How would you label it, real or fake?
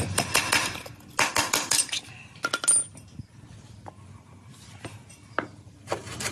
real